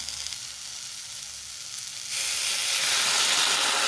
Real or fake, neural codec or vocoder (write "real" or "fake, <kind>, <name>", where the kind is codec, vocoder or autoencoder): real